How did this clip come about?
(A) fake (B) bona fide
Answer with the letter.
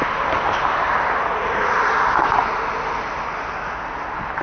B